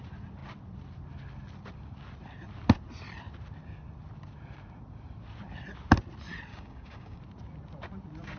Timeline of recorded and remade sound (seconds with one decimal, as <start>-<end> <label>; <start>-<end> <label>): 0.0-6.5 recorded; 6.5-7.2 remade; 7.2-8.4 recorded